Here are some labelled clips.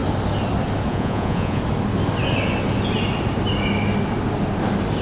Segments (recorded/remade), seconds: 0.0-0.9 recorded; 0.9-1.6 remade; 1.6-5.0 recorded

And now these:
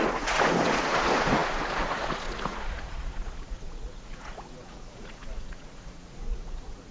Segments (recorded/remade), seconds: 0.0-6.9 remade

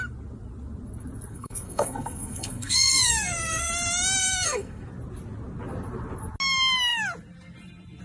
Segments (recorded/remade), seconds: 0.0-1.3 recorded; 1.3-3.7 remade; 3.7-4.2 recorded; 4.2-4.8 remade; 4.8-8.0 recorded